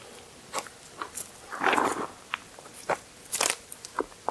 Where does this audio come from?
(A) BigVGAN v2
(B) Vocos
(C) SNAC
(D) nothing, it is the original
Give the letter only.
D